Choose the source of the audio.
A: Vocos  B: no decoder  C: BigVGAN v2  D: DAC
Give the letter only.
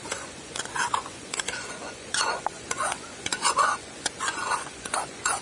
A